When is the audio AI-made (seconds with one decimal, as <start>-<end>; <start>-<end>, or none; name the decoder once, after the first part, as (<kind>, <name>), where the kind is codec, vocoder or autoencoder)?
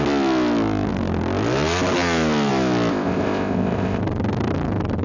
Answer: 2.9-4.0 (codec, ZipCodec)